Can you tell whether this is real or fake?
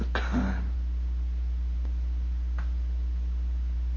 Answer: real